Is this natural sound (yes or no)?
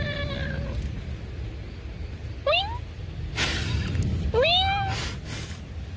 yes